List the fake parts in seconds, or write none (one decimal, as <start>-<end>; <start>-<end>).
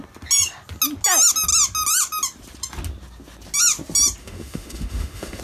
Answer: 4.2-5.4